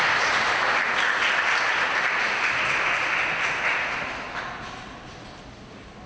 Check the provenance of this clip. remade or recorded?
recorded